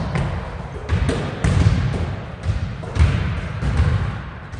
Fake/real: real